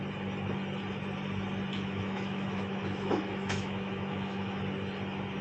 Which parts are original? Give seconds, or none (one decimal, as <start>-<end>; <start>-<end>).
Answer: 0.0-1.7; 4.6-5.4